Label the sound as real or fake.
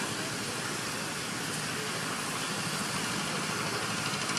real